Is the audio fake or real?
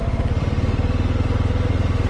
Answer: fake